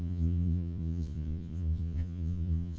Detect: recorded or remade remade